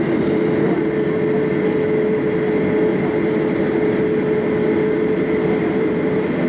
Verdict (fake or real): real